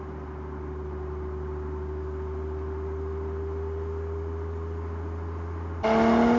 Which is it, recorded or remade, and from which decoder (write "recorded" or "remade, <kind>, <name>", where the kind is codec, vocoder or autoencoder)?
recorded